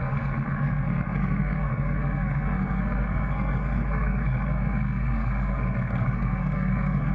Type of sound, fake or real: fake